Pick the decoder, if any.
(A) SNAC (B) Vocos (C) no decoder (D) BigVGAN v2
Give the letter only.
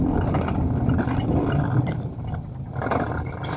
C